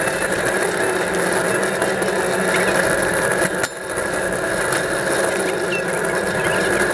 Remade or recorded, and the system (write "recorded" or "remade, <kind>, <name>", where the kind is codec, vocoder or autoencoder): recorded